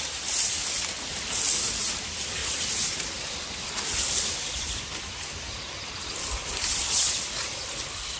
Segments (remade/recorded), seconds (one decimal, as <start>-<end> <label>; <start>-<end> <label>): 0.0-8.2 recorded